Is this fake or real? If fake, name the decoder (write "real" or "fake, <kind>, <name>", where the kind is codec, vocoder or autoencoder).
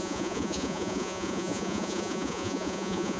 fake, vocoder, Vocos